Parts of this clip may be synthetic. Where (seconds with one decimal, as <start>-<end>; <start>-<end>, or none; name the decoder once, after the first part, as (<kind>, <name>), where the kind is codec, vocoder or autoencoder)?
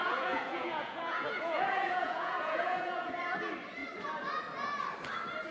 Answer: 0.0-3.1 (vocoder, Vocos)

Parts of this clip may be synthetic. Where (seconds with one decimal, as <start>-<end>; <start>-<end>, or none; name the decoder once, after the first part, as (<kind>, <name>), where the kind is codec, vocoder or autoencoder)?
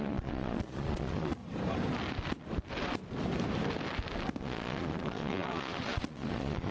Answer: 0.0-1.4 (vocoder, Vocos); 4.4-6.7